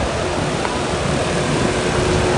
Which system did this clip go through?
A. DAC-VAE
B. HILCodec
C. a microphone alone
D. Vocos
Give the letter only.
C